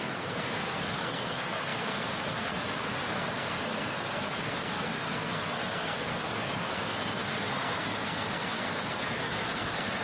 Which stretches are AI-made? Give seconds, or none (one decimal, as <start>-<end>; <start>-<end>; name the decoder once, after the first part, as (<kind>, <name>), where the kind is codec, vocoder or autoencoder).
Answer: 0.0-10.0 (codec, SNAC)